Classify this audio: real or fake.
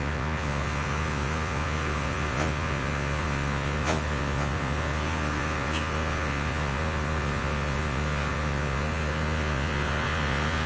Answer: fake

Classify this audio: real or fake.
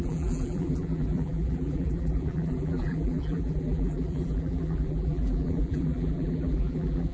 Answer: fake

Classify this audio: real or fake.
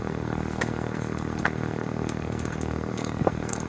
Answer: fake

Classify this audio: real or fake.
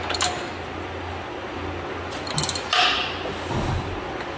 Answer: real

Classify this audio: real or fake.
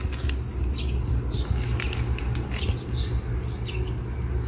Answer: real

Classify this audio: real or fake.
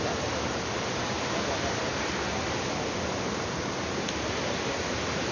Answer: real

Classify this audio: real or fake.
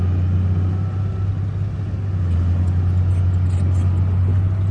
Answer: real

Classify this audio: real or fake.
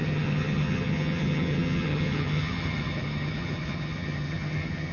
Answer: fake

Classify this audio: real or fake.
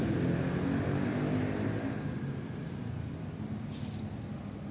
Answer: real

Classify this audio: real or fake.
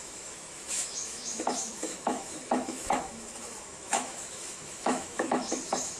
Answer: fake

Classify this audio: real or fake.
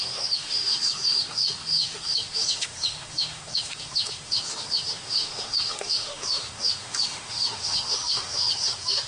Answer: fake